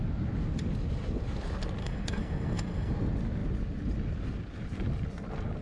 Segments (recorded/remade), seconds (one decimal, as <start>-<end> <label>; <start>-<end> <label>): 0.0-1.8 recorded; 1.8-2.9 remade; 2.9-5.6 recorded